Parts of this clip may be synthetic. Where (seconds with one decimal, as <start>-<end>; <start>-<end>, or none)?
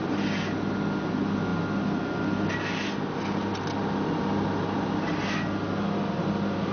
none